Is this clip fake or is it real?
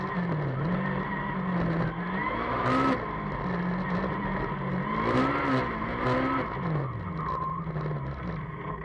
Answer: real